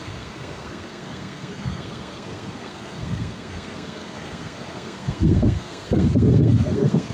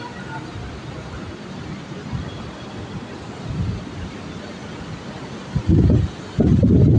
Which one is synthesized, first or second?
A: first